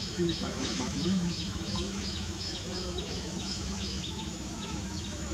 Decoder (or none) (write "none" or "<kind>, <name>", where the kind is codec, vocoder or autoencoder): autoencoder, DAC-VAE